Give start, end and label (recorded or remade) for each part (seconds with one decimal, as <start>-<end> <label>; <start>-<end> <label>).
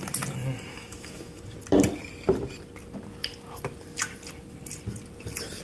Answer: 0.0-0.7 recorded; 0.7-1.4 remade; 1.4-5.6 recorded